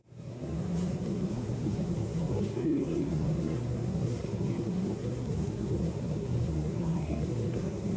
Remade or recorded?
remade